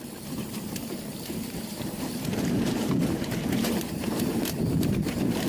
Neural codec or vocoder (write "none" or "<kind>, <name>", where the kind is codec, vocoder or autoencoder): vocoder, BigVGAN v2